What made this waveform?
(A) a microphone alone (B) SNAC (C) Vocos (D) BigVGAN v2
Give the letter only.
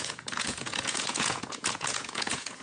C